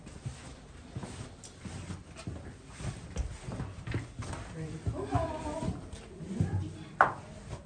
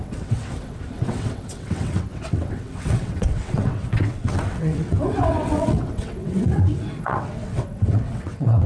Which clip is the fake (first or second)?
second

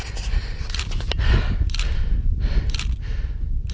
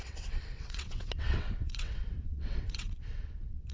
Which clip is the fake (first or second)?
second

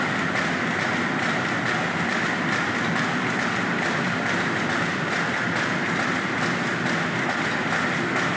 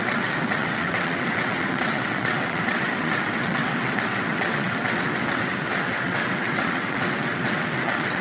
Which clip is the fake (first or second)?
second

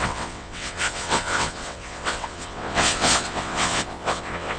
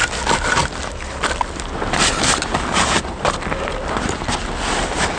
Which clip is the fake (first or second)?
first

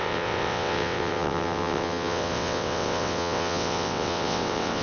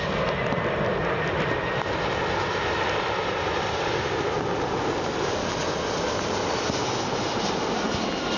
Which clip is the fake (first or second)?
first